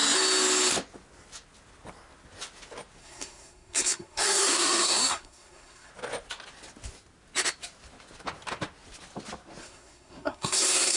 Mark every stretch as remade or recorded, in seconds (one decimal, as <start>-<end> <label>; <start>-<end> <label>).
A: 0.0-3.0 recorded; 3.0-5.9 remade; 5.9-9.6 recorded; 9.6-11.0 remade